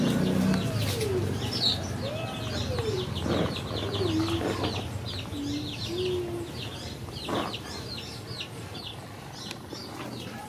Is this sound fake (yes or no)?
no